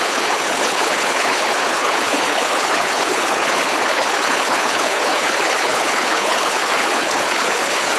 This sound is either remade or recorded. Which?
remade